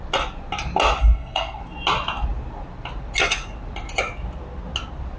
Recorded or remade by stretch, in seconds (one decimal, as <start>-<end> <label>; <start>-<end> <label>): 0.0-1.0 recorded; 1.0-1.6 remade; 1.6-5.2 recorded